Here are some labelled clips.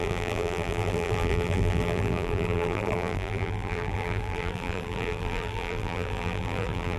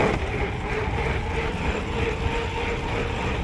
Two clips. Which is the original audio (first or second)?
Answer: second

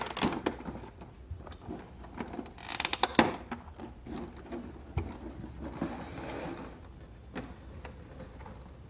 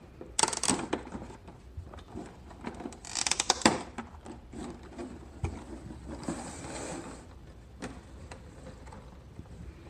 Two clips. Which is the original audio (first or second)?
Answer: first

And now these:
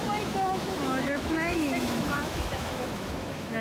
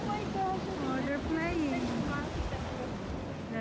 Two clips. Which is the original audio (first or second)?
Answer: second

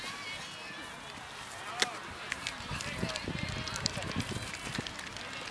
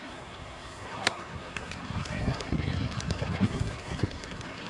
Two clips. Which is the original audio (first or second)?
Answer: first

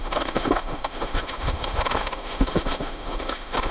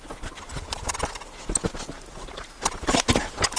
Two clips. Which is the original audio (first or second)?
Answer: second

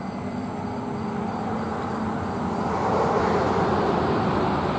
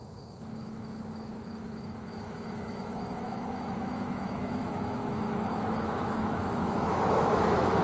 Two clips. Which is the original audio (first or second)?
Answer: first